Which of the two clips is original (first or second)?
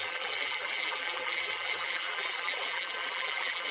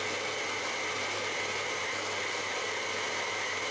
second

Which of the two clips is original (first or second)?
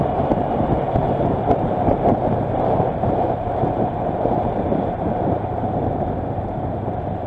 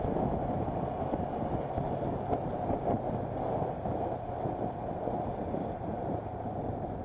second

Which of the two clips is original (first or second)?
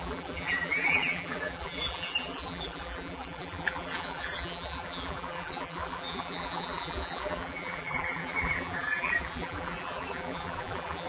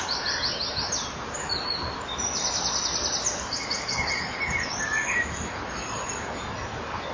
second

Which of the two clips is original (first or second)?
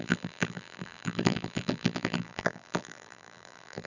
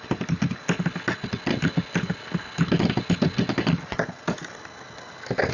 second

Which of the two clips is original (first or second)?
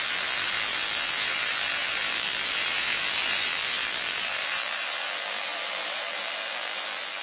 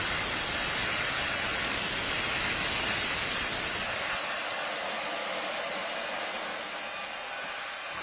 second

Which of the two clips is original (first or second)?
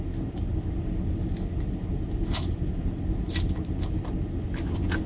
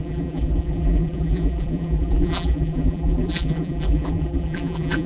first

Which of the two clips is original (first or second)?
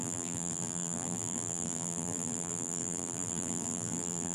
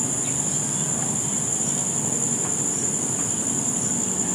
second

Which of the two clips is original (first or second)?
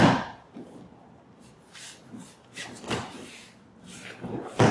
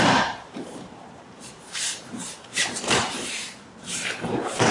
first